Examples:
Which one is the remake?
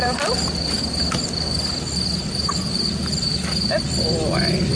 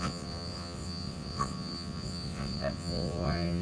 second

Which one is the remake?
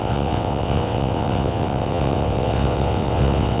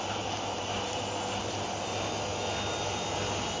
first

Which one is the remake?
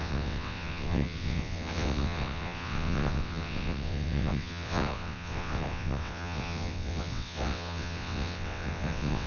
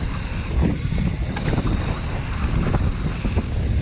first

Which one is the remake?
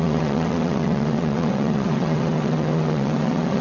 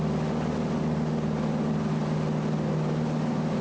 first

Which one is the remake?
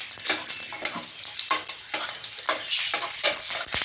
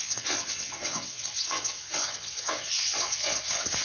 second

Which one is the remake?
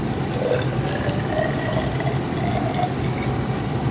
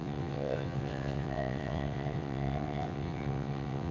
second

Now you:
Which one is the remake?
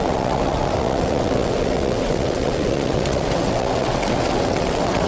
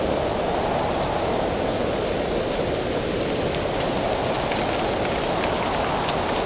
first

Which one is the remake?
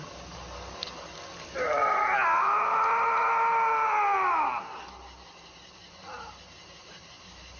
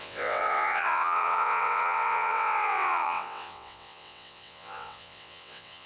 second